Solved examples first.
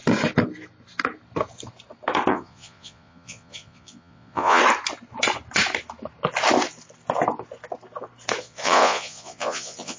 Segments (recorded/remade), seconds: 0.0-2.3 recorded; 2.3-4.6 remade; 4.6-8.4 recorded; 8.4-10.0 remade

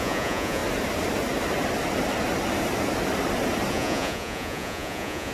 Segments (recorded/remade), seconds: 0.0-0.6 remade; 0.6-3.7 recorded; 3.7-5.3 remade